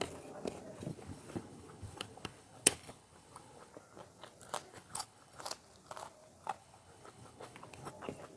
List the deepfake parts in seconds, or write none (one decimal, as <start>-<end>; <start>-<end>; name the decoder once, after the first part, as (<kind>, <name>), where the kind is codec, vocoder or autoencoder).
0.9-3.7 (codec, HILCodec); 4.7-5.4; 6.6-7.9